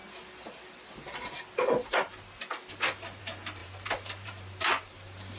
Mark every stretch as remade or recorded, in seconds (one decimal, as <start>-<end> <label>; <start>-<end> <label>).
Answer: 0.0-3.6 recorded; 3.6-5.4 remade